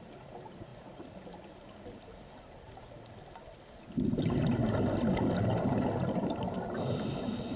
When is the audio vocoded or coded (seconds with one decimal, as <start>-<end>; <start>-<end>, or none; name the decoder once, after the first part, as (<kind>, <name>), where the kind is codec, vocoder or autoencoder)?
none